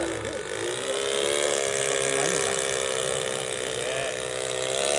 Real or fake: real